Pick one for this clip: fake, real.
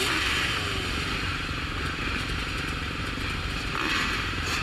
fake